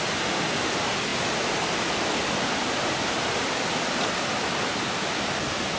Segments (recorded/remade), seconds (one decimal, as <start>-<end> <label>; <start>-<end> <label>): 0.0-5.8 recorded